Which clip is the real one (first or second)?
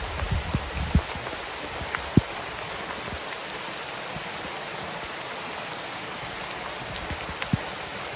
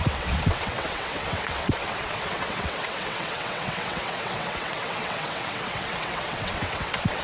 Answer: first